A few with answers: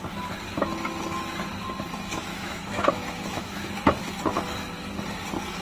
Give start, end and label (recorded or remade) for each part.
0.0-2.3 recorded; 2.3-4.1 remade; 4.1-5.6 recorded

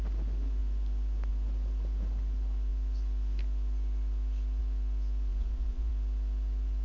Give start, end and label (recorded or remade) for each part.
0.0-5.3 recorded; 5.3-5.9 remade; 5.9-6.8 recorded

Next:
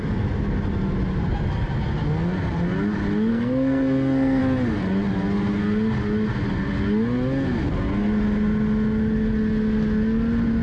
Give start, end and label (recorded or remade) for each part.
0.0-3.3 recorded; 3.3-4.4 remade; 4.4-10.6 recorded

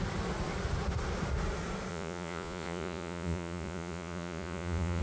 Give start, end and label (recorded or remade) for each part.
0.0-1.9 recorded; 1.9-5.0 remade